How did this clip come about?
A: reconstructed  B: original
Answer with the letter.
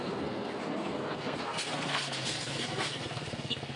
A